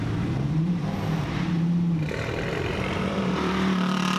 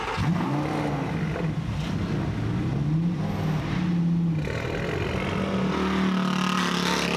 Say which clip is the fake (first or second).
first